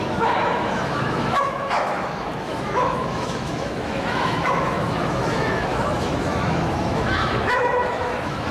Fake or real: fake